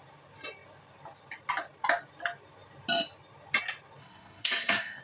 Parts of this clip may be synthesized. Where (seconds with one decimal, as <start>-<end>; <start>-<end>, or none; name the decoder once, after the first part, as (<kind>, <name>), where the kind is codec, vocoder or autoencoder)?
4.0-5.0 (codec, SNAC)